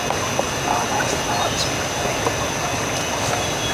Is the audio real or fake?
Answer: real